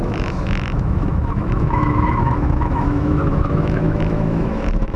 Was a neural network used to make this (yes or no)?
yes